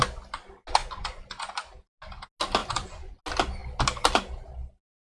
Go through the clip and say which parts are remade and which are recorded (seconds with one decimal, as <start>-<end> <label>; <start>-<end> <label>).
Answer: 0.0-0.8 recorded; 0.8-1.5 remade; 1.5-2.6 recorded; 2.6-3.2 remade; 3.2-5.0 recorded